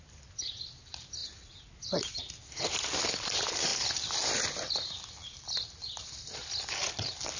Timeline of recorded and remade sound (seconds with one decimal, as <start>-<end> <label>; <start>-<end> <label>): 0.0-7.4 recorded